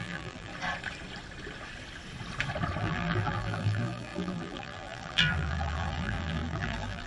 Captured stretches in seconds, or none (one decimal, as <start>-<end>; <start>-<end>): 0.5-2.8